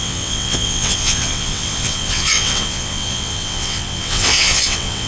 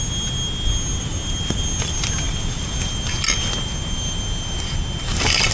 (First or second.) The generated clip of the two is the first